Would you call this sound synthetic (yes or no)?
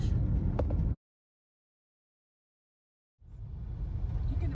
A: no